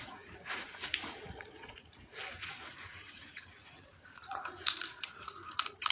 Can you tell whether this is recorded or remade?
remade